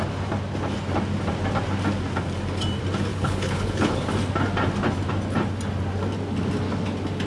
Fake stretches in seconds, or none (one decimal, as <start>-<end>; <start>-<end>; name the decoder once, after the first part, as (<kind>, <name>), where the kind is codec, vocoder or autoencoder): 3.1-4.0 (codec, HILCodec)